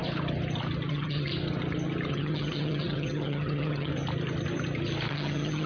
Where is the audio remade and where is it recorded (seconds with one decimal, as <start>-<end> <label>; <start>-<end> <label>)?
0.0-0.9 recorded; 0.9-1.3 remade; 1.3-2.1 recorded; 2.1-3.9 remade; 3.9-5.1 recorded; 5.1-5.7 remade